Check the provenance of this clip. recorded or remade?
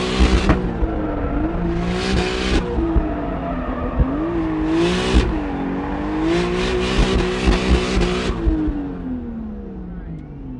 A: recorded